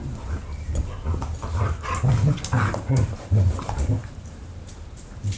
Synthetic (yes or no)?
yes